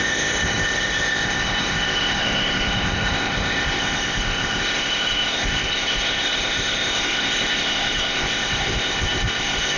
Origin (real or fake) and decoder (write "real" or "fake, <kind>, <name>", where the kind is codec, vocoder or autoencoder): fake, codec, ZipCodec